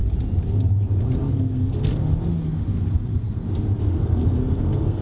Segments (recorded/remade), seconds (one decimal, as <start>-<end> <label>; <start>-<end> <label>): 0.0-1.3 recorded; 1.3-1.9 remade; 1.9-3.8 recorded; 3.8-5.0 remade